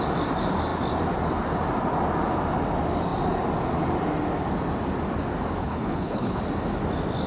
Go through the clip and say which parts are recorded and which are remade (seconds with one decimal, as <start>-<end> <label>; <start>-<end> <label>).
0.0-5.6 recorded; 5.6-6.4 remade; 6.4-7.3 recorded